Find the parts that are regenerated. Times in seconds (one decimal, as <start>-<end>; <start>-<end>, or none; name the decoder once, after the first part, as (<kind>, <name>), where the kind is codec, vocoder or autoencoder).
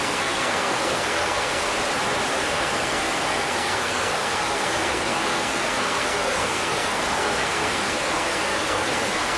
0.0-1.7 (codec, SNAC); 2.3-9.4